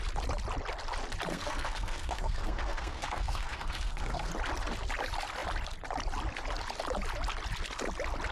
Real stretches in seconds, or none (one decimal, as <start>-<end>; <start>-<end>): 0.0-1.3; 4.3-8.3